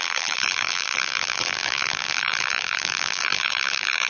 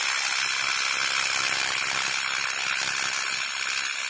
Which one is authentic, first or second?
second